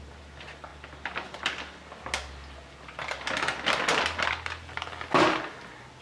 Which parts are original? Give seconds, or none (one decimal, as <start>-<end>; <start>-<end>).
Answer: 0.0-6.0